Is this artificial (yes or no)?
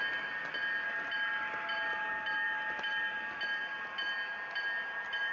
no